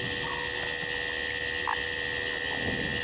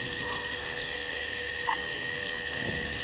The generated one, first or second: second